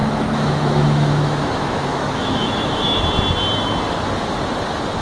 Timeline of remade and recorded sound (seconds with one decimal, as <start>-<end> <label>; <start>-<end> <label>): 0.0-3.0 remade; 3.0-5.0 recorded